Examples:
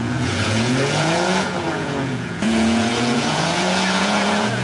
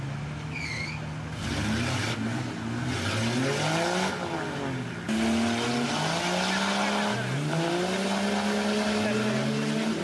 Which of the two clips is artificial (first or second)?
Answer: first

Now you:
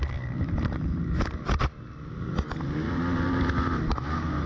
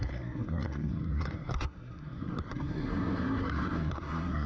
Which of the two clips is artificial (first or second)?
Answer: second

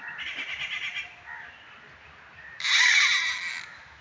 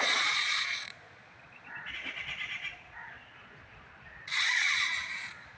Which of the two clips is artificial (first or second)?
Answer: second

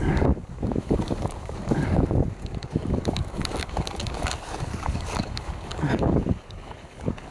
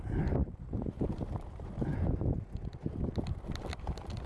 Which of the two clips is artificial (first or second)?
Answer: first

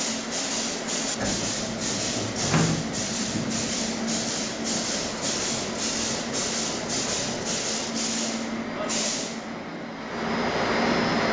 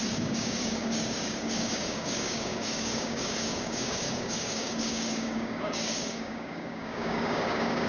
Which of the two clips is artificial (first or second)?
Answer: second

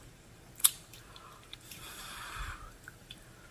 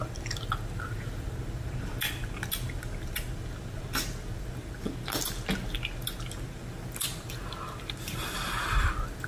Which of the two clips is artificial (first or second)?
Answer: first